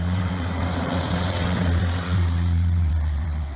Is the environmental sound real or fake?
fake